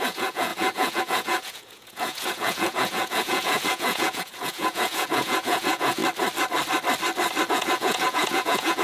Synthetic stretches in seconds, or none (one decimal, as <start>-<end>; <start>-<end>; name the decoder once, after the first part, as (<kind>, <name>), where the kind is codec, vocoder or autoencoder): 0.0-6.0 (vocoder, Vocos); 7.5-8.8